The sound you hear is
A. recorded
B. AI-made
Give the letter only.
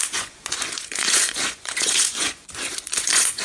B